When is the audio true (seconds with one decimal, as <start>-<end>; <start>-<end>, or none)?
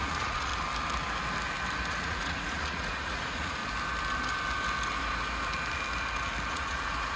0.5-1.9; 3.6-6.5